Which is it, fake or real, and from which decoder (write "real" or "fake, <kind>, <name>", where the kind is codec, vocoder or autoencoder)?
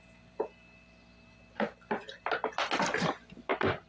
real